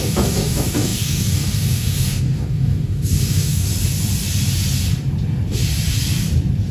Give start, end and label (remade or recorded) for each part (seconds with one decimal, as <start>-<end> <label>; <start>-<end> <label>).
0.0-3.7 remade; 3.7-6.7 recorded